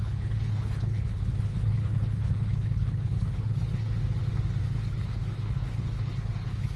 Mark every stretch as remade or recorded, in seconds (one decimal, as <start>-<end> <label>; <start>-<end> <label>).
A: 0.0-4.0 remade; 4.0-4.6 recorded; 4.6-6.8 remade